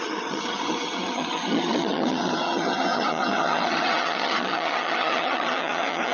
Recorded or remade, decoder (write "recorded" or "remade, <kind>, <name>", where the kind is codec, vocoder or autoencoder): remade, vocoder, HiFi-GAN